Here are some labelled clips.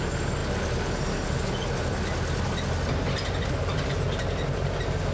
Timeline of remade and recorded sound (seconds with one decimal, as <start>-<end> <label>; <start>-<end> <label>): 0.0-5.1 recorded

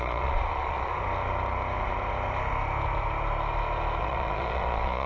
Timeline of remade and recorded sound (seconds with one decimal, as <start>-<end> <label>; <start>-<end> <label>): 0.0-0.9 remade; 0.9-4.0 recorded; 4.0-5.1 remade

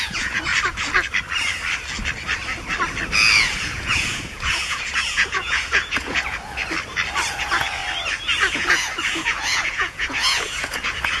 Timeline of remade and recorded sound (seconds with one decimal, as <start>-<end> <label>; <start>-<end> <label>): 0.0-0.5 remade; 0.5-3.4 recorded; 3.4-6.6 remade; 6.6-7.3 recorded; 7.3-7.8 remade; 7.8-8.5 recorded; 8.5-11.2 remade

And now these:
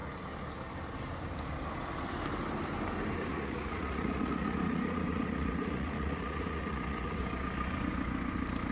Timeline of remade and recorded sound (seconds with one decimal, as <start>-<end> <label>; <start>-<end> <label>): 0.0-3.3 recorded; 3.3-7.2 remade; 7.2-8.7 recorded

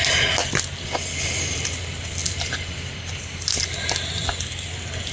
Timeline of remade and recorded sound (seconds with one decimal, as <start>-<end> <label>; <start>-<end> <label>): 0.0-5.1 recorded

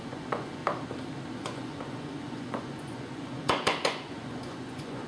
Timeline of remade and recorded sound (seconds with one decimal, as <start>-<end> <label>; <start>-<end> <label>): 0.0-0.6 remade; 0.6-1.3 recorded; 1.3-5.1 remade